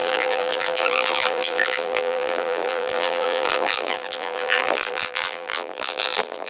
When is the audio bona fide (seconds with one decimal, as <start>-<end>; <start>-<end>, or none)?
none